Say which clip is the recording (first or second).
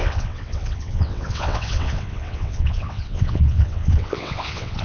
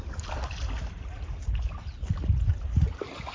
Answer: second